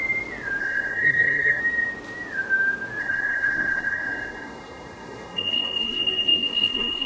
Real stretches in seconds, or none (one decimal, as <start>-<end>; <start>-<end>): 0.0-0.6; 1.6-3.0